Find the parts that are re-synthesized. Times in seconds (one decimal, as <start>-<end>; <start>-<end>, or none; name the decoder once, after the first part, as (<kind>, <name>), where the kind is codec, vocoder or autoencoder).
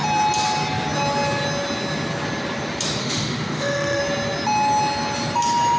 3.0-4.0 (autoencoder, DAC-VAE)